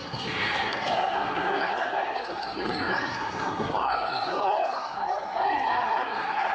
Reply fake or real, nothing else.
fake